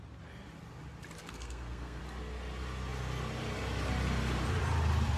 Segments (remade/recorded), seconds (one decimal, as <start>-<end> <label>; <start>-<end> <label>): 0.0-1.2 recorded; 1.2-2.0 remade; 2.0-5.2 recorded